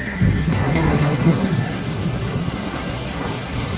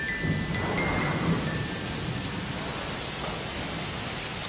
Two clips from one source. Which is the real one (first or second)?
second